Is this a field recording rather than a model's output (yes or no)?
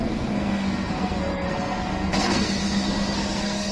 no